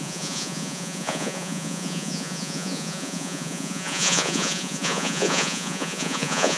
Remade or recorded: remade